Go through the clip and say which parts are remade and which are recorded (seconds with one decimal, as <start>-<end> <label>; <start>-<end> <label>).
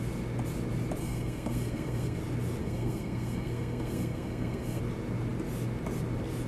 0.0-1.0 recorded; 1.0-2.2 remade; 2.2-2.6 recorded; 2.6-4.8 remade; 4.8-6.5 recorded